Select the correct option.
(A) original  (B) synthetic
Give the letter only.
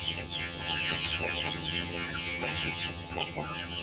B